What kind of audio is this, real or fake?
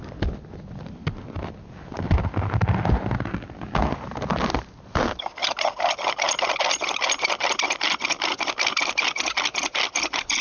real